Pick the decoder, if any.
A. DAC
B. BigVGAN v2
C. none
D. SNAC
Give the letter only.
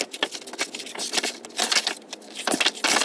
C